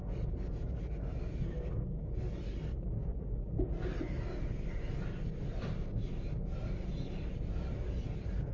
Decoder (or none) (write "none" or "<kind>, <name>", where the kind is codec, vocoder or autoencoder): none